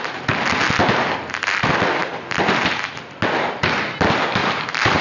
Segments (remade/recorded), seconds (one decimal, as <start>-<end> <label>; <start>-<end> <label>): 0.0-4.4 recorded; 4.4-5.0 remade